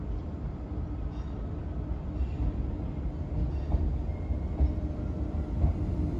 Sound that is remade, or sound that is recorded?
recorded